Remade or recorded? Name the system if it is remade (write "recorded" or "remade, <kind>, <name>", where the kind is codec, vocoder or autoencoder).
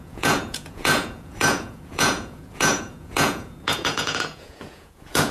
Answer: remade, vocoder, Vocos